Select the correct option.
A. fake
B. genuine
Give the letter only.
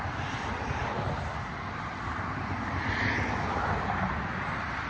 B